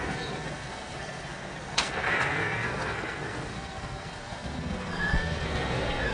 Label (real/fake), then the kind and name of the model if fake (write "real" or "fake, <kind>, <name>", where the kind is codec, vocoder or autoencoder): fake, codec, SNAC